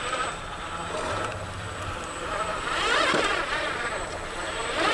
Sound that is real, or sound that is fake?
fake